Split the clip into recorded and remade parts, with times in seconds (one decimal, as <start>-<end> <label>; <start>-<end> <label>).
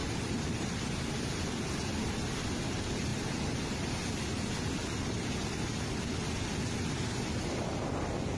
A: 0.0-1.1 remade; 1.1-8.4 recorded